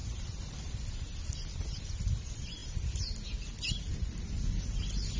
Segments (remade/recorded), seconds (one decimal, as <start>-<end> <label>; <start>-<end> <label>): 0.0-5.2 recorded